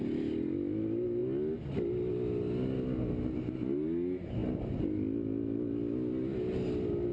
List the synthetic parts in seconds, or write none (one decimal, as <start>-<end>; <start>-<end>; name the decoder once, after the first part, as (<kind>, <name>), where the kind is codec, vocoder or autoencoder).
none